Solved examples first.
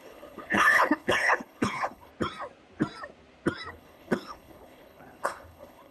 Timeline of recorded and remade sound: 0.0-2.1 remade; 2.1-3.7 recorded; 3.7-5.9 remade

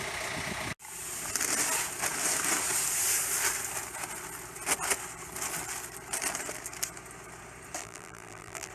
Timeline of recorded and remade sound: 0.0-7.8 recorded; 7.8-8.7 remade